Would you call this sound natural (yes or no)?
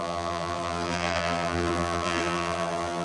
no